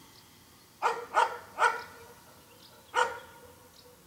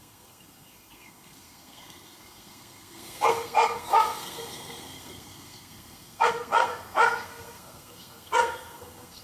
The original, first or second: first